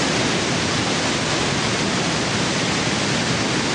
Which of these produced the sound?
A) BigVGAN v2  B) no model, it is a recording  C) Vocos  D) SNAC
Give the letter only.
B